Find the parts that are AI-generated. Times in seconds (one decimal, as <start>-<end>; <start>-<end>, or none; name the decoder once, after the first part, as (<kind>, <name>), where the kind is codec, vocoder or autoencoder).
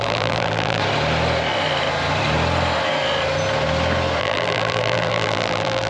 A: 0.0-0.8 (vocoder, BigVGAN v2); 4.2-5.9